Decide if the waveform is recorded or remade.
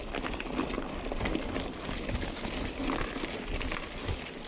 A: recorded